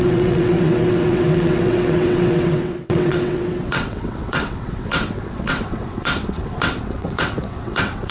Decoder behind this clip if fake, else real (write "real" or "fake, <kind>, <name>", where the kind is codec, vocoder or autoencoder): fake, vocoder, WaveNeXt